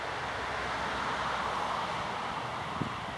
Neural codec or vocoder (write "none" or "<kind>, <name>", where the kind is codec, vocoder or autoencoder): none